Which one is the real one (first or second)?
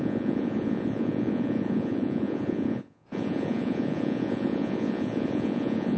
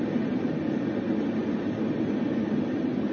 second